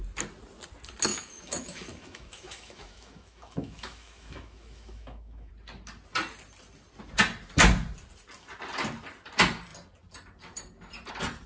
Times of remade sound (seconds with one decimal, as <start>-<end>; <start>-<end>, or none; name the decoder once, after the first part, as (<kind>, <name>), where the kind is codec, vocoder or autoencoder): 1.1-5.5 (autoencoder, DAC-VAE)